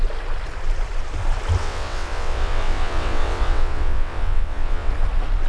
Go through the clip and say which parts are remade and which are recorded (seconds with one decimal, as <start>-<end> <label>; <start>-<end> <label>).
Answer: 0.0-1.6 recorded; 1.6-4.9 remade; 4.9-5.5 recorded